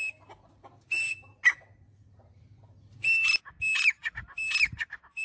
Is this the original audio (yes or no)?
yes